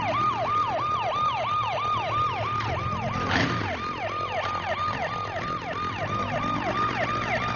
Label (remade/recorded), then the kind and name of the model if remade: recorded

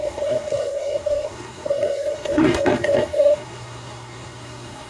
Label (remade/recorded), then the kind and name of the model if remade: remade, codec, SNAC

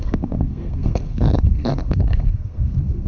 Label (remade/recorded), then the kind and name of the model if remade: remade, codec, SNAC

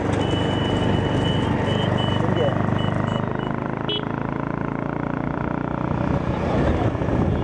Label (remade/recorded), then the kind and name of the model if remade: recorded